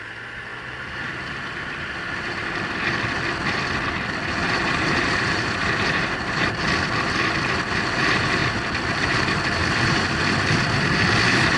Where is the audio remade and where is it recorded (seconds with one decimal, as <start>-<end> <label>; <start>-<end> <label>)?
0.0-4.4 recorded; 4.4-6.6 remade; 6.6-11.6 recorded